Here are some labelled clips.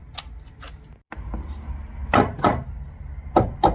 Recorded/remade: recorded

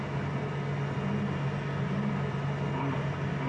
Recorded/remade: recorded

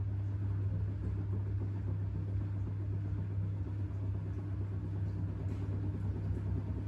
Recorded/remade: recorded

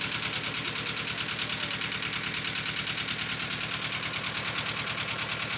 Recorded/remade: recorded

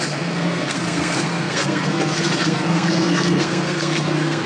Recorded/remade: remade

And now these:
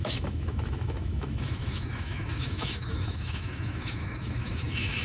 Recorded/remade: remade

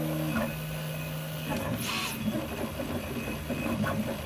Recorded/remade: recorded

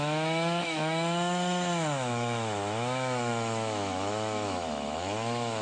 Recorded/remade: remade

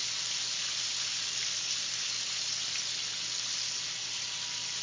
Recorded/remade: recorded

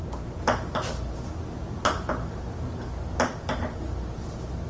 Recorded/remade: recorded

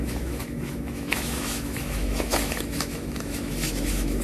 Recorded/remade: remade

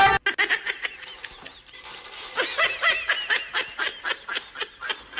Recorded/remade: recorded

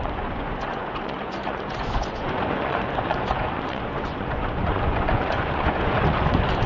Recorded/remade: remade